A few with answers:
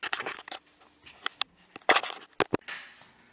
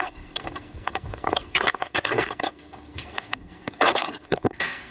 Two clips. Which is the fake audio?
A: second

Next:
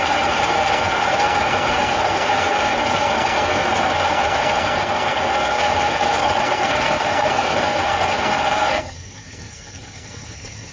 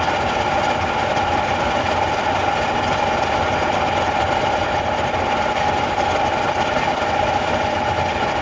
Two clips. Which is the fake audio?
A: first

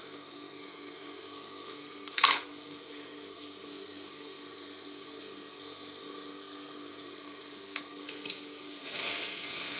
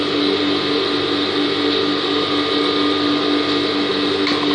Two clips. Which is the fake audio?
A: first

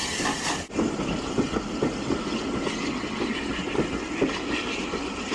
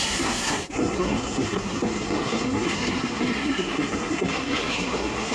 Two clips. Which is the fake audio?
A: second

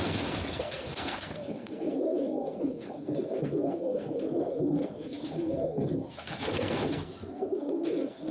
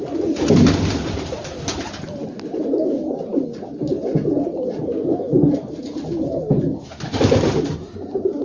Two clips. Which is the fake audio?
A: first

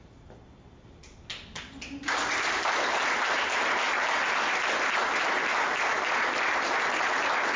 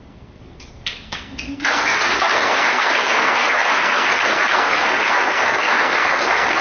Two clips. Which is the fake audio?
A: second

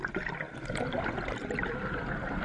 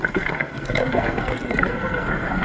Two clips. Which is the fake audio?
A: second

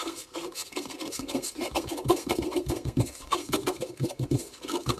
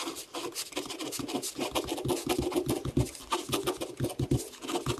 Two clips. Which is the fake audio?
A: first